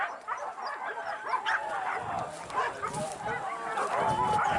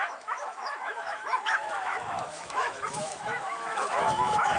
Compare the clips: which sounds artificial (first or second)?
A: second